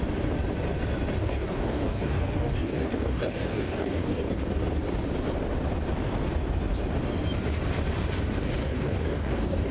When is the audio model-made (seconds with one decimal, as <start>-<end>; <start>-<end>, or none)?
1.2-4.4; 8.6-9.7